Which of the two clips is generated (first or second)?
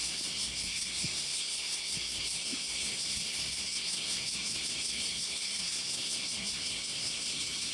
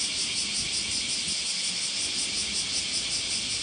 first